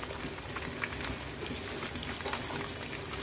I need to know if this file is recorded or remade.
recorded